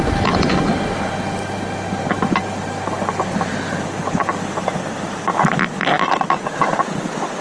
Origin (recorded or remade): recorded